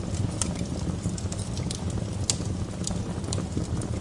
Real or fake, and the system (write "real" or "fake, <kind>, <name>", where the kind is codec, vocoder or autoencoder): real